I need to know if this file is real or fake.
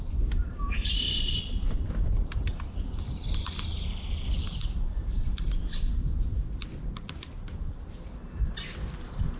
real